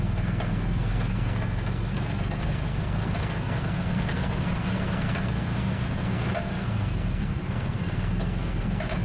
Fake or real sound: fake